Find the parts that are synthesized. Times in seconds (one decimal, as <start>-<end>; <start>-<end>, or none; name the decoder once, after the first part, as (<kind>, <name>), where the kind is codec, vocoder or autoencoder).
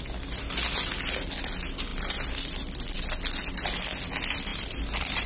1.9-2.9 (vocoder, BigVGAN v2); 4.5-5.3